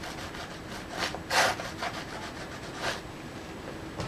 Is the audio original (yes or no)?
yes